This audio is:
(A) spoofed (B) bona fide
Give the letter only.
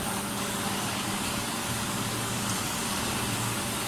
A